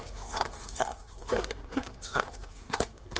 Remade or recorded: remade